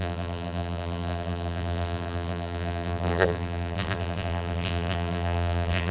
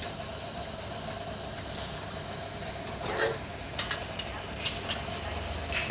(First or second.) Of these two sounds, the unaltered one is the second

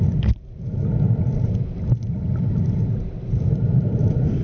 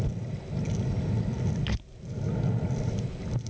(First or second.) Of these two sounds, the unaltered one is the second